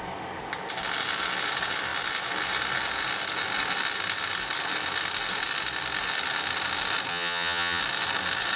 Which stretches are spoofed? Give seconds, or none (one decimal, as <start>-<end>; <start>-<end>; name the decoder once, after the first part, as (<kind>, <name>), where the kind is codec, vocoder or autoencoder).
7.1-7.8 (vocoder, HiFi-GAN)